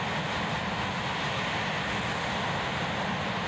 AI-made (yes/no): no